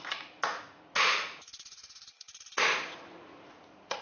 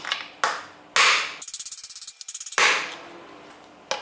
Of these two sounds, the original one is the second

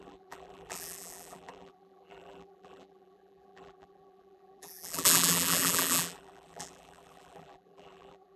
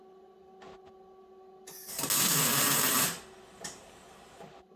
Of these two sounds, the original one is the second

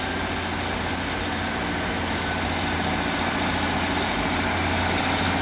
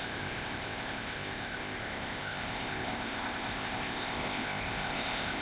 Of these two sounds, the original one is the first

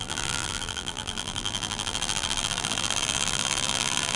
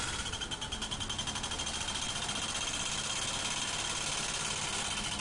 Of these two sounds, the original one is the second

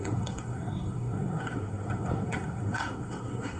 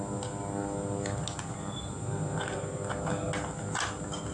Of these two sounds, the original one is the second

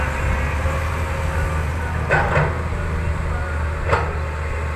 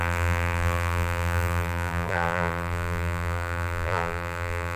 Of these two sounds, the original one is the first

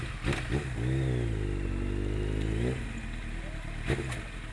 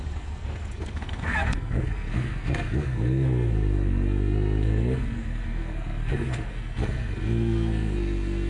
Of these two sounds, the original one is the first